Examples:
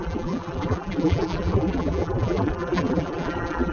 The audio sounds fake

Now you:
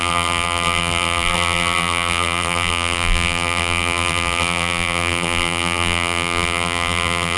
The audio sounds fake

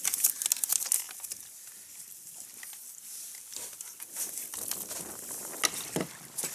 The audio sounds real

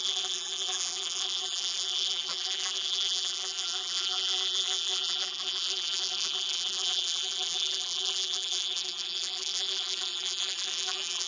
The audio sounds fake